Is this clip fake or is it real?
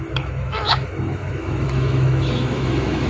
fake